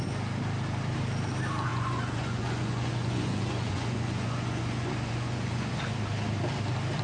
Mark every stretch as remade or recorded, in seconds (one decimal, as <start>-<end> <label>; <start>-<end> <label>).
0.0-1.7 recorded; 1.7-5.8 remade; 5.8-7.0 recorded